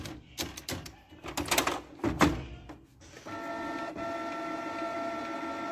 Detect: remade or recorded recorded